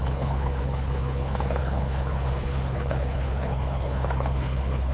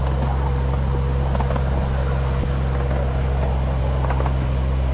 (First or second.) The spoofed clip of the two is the first